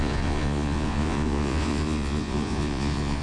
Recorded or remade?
remade